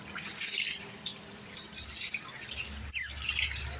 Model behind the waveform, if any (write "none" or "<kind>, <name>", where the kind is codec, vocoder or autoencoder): vocoder, BigVGAN v2